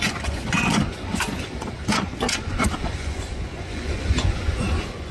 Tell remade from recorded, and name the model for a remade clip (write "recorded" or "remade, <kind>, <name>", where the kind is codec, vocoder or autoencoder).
remade, vocoder, Vocos